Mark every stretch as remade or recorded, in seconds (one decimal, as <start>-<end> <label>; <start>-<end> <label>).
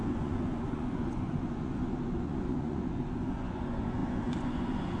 0.0-5.0 remade